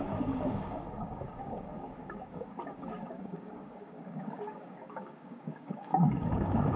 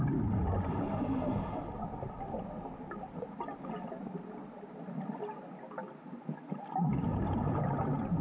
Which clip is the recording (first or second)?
second